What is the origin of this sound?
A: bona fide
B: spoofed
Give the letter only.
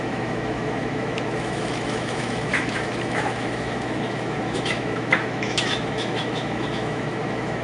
B